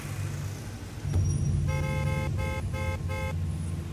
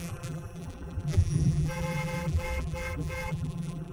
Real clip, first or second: first